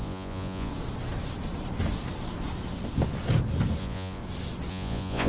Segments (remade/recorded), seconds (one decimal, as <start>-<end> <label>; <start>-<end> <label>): 0.0-0.7 remade; 0.7-3.8 recorded; 3.8-4.2 remade; 4.2-4.7 recorded; 4.7-5.3 remade